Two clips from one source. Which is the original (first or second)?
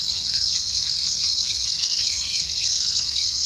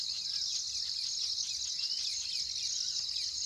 second